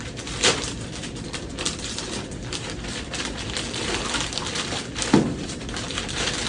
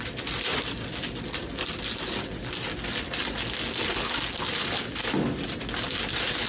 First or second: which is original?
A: second